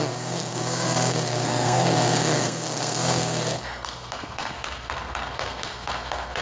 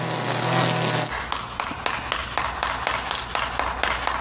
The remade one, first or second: first